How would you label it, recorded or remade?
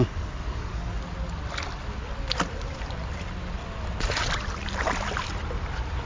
recorded